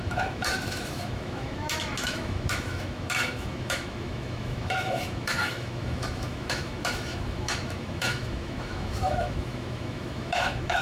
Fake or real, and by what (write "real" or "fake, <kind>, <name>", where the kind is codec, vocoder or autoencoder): fake, autoencoder, DAC-VAE